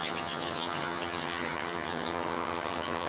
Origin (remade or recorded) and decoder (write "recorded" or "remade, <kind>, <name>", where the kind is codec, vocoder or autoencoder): remade, vocoder, HiFi-GAN